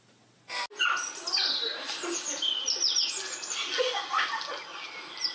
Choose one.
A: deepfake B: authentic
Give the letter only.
B